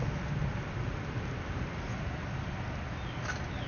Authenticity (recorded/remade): recorded